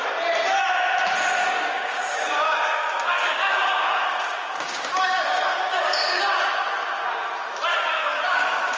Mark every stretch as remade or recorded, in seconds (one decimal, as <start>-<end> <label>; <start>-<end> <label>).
0.0-1.4 recorded; 1.4-6.2 remade; 6.2-7.7 recorded; 7.7-8.8 remade